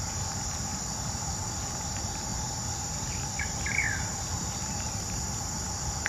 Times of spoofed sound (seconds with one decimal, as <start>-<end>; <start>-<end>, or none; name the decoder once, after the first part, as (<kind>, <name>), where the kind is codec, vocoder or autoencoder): 2.3-6.1 (vocoder, BigVGAN v2)